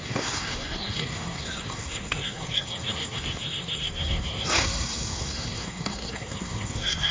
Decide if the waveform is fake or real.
fake